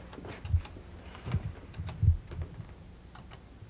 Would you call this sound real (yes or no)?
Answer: yes